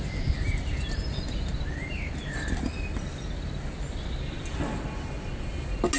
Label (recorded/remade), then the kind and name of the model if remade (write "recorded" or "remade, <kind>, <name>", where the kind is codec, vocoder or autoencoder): recorded